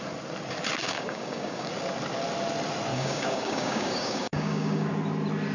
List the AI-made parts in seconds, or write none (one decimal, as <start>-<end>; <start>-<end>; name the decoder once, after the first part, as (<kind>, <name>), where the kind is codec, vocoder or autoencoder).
0.8-1.7 (codec, DAC); 2.9-4.9